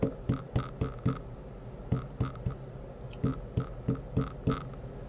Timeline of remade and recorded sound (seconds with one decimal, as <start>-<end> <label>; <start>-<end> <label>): 0.0-5.1 recorded